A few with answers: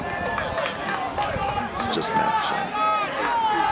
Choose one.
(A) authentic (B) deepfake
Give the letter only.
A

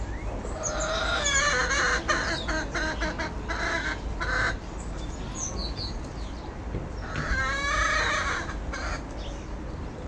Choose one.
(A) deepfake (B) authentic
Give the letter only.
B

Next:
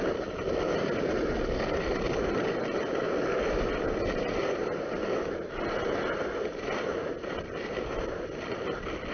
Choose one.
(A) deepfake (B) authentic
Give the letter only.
B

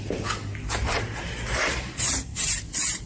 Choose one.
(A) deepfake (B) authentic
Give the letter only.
B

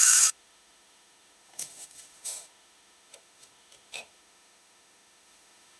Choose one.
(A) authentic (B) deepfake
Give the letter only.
B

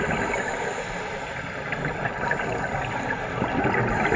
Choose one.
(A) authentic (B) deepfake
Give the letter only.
A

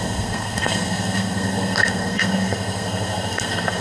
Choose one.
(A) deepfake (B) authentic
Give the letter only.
A